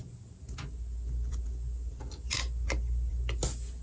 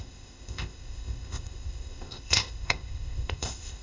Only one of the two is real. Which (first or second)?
first